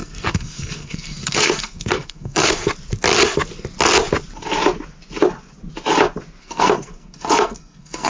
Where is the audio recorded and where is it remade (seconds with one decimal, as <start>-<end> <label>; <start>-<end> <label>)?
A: 0.0-2.6 remade; 2.6-6.4 recorded; 6.4-8.1 remade